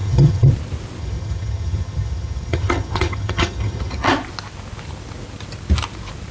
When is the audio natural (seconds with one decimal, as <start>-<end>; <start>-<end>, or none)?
0.5-1.0; 4.1-6.3